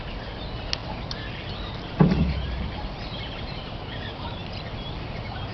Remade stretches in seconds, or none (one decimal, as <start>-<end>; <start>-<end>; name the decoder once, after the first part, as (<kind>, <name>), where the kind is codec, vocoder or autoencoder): 0.8-3.4 (vocoder, BigVGAN v2); 4.4-5.5